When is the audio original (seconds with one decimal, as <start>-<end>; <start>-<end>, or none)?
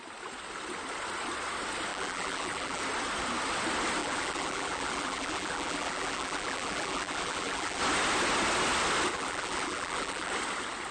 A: 0.0-1.9; 2.8-4.0; 7.8-9.1; 10.3-10.9